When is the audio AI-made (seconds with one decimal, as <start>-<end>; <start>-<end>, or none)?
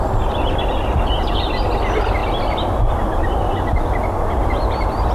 none